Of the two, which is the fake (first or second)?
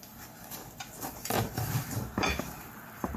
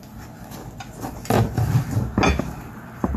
first